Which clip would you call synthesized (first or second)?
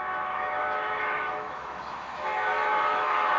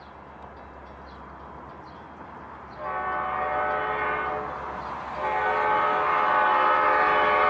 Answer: first